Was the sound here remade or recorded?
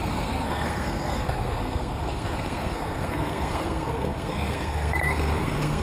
remade